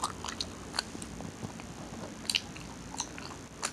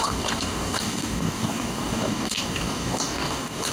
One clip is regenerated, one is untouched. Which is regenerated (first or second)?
second